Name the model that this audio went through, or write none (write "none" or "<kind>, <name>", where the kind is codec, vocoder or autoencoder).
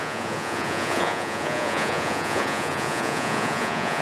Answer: vocoder, Vocos